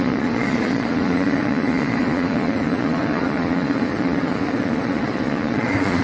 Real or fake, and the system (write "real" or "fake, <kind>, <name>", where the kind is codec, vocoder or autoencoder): fake, vocoder, Vocos